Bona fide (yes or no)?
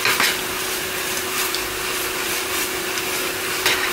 yes